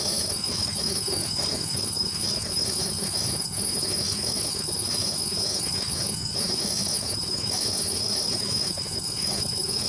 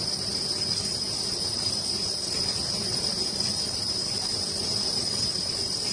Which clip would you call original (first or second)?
second